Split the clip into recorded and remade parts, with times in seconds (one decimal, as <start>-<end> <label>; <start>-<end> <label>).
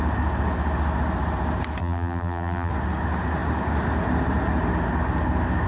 0.0-1.8 recorded; 1.8-2.7 remade; 2.7-5.7 recorded